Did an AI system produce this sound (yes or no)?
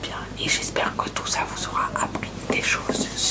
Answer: no